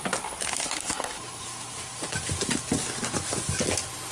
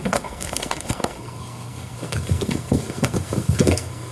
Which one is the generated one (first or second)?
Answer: second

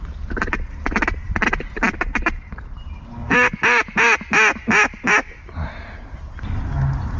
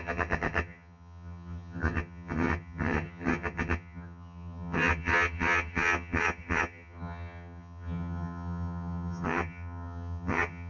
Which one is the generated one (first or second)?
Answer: second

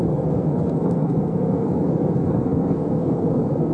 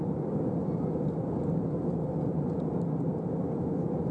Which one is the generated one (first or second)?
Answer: first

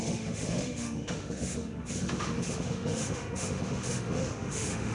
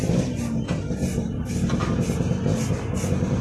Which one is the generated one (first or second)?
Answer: first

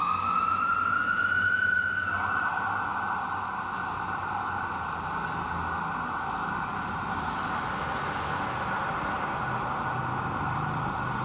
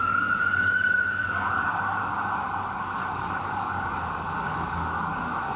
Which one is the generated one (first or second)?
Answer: second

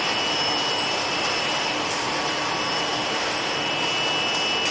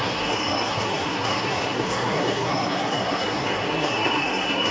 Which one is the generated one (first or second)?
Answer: second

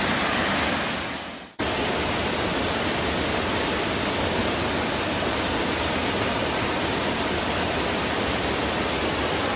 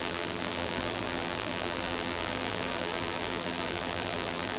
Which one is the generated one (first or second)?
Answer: second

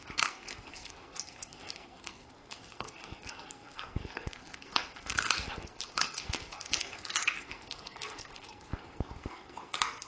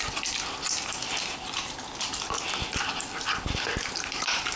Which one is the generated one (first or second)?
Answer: first